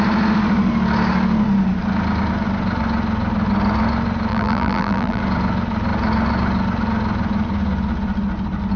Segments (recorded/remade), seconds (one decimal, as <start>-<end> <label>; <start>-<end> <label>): 0.0-4.3 recorded; 4.3-5.2 remade; 5.2-8.8 recorded